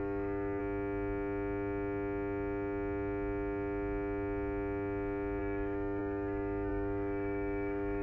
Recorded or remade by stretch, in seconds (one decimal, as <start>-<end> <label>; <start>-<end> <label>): 0.0-0.6 remade; 0.6-5.4 recorded; 5.4-8.0 remade